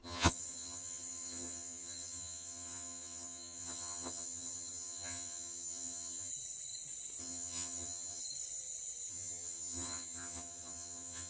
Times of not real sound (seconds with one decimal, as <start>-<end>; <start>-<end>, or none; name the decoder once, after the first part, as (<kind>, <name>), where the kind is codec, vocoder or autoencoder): 0.0-6.3 (vocoder, HiFi-GAN); 7.2-8.2; 9.1-11.3